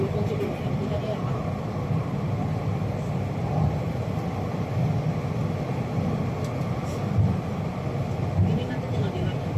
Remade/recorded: recorded